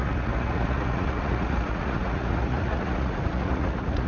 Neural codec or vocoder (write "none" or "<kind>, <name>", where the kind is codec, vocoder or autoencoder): vocoder, Vocos